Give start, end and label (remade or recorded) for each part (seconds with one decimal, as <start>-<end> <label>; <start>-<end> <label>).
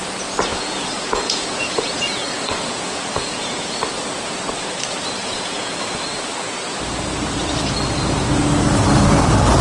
0.0-0.5 recorded; 0.5-3.7 remade; 3.7-5.2 recorded; 5.2-5.8 remade; 5.8-9.6 recorded